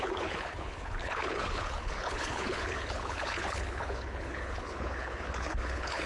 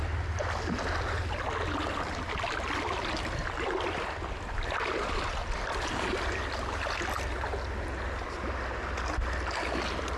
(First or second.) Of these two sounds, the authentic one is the second